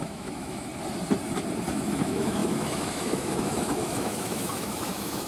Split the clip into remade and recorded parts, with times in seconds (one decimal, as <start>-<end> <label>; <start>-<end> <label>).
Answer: 0.0-0.7 remade; 0.7-1.7 recorded; 1.7-5.3 remade